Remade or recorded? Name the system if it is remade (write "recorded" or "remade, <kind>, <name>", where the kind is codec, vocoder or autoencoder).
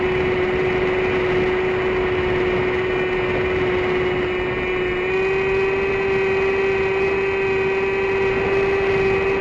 recorded